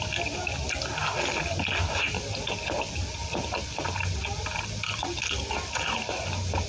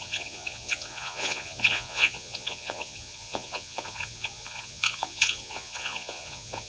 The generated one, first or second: second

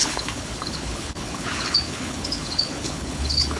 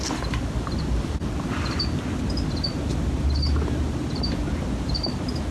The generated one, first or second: first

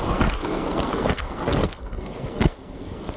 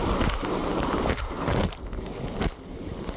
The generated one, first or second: first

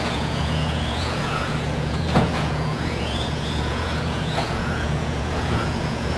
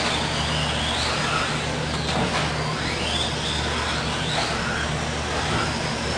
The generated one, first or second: first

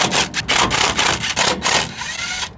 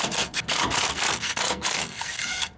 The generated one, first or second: second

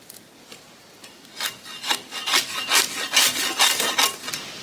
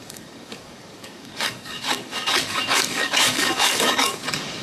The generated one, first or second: second